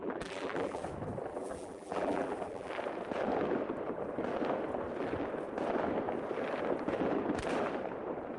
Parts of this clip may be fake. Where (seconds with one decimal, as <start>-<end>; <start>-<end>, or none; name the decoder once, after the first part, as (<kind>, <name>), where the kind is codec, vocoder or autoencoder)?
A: 0.0-0.8 (vocoder, BigVGAN v2); 1.3-2.7